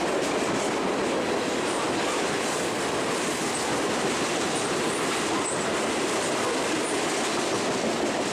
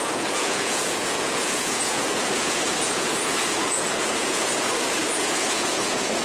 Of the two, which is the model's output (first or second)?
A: second